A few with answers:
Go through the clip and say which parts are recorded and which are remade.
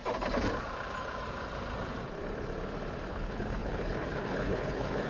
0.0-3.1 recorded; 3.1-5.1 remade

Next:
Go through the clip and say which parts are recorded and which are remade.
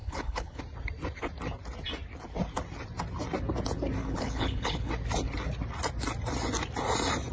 0.0-0.6 remade; 0.6-4.0 recorded; 4.0-4.9 remade; 4.9-7.3 recorded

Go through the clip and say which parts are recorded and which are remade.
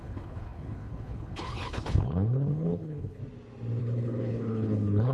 0.0-3.2 remade; 3.2-3.8 recorded; 3.8-5.1 remade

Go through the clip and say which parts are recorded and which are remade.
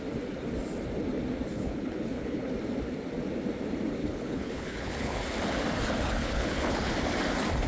0.0-1.5 recorded; 1.5-2.5 remade; 2.5-4.0 recorded; 4.0-5.2 remade; 5.2-6.2 recorded; 6.2-6.9 remade; 6.9-7.7 recorded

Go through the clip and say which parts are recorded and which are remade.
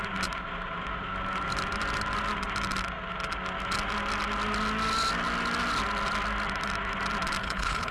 0.0-7.4 recorded; 7.4-7.9 remade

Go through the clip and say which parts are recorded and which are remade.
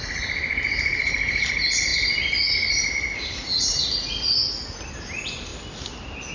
0.0-6.3 recorded